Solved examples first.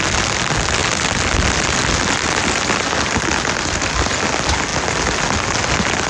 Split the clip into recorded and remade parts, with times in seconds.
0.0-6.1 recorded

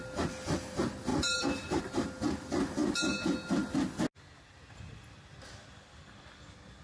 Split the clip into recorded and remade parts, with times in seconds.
0.0-1.1 recorded; 1.1-1.8 remade; 1.8-6.8 recorded

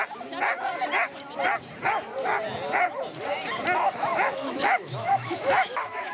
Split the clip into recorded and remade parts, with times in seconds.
0.0-4.1 recorded; 4.1-6.1 remade

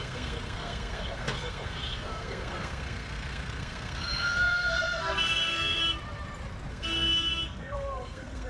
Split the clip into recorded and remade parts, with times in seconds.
0.0-5.8 remade; 5.8-6.7 recorded; 6.7-8.5 remade